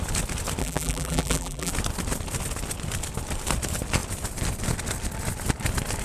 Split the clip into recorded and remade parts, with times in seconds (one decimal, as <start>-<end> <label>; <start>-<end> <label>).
0.0-0.6 recorded; 0.6-1.7 remade; 1.7-6.0 recorded